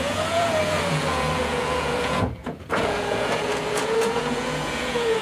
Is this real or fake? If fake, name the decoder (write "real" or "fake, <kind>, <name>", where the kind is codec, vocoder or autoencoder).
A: fake, vocoder, Vocos